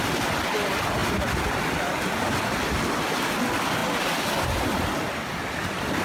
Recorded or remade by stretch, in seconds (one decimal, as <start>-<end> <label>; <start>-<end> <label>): 0.0-6.0 recorded